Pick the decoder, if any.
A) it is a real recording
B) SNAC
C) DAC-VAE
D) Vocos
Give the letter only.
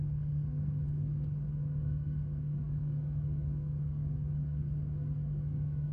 B